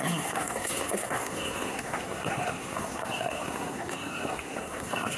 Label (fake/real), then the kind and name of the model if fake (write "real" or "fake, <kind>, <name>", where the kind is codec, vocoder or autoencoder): fake, codec, SNAC